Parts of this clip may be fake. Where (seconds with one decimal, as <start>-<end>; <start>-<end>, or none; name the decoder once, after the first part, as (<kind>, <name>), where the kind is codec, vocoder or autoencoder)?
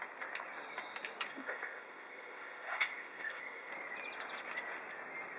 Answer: 1.3-3.7 (codec, ZipCodec)